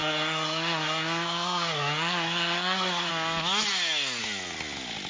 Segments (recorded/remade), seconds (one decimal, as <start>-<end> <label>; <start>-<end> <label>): 0.0-3.1 remade; 3.1-5.1 recorded